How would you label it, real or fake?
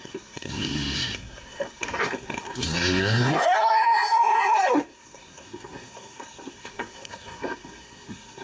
fake